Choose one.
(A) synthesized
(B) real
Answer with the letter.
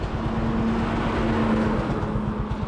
B